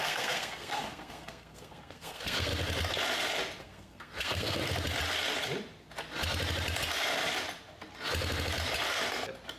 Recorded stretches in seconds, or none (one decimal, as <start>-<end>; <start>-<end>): 2.5-3.6; 4.6-9.6